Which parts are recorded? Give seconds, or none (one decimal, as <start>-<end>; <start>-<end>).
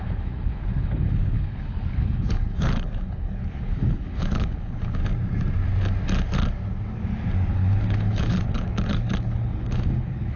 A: 5.0-7.5